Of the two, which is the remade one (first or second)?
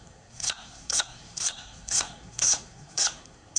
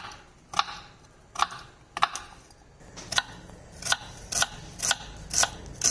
first